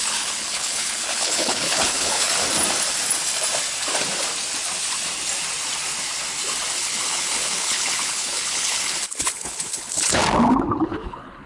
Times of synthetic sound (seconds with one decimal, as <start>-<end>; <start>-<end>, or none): 0.0-2.3; 6.8-10.2; 10.8-11.5